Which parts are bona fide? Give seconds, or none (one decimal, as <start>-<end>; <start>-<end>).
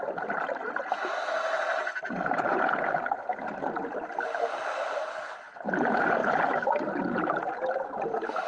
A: 0.0-8.5